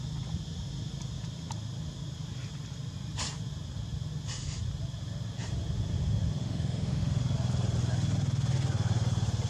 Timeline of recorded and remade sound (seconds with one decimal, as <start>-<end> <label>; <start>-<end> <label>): 0.0-6.4 recorded; 6.4-7.2 remade; 7.2-9.5 recorded